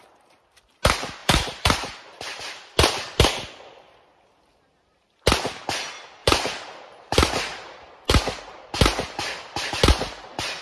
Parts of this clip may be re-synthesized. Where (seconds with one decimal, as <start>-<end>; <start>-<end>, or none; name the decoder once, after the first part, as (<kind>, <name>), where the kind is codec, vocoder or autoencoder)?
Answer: 1.2-2.4 (vocoder, BigVGAN v2); 6.2-8.4